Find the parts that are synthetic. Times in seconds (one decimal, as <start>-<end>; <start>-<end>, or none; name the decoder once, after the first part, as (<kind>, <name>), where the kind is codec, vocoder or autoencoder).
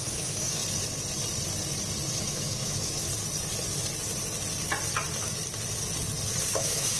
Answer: 0.0-0.6 (autoencoder, DAC-VAE); 2.2-3.1; 6.5-7.0